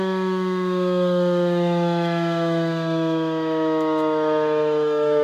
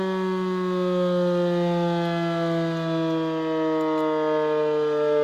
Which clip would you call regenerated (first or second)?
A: first